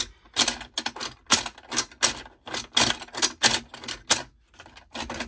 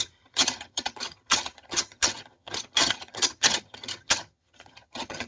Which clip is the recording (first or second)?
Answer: first